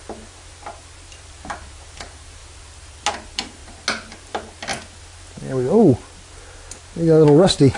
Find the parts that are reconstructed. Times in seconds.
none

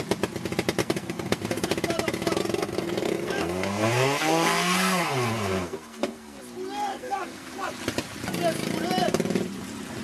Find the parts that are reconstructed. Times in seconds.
0.8-1.7 (codec, SNAC); 2.4-6.4; 6.9-7.7

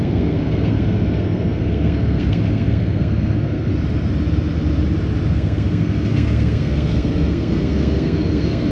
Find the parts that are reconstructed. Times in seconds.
0.0-3.7 (codec, SNAC); 5.3-8.7

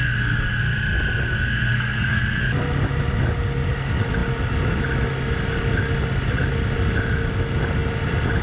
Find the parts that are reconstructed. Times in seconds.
0.0-0.6 (codec, SNAC); 1.2-2.4